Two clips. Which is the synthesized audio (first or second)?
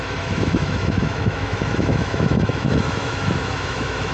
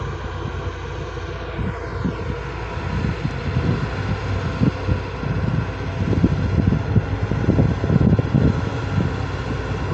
first